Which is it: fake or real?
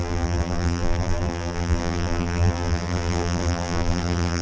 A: fake